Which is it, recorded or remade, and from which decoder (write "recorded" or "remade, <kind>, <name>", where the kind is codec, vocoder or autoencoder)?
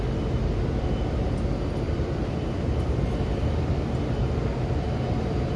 remade, vocoder, BigVGAN v2